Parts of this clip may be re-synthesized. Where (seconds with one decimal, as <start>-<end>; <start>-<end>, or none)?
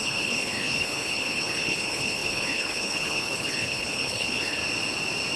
0.0-4.6